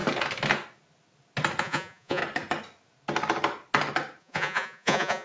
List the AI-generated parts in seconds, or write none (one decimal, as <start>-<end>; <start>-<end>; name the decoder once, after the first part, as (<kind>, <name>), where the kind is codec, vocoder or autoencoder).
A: 1.6-2.2 (vocoder, Vocos); 4.2-5.2